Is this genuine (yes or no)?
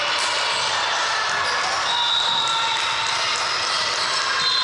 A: yes